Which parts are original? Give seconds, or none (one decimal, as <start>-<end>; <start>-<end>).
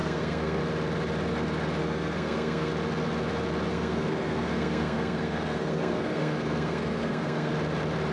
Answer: 0.6-1.8; 2.7-3.7; 7.5-8.1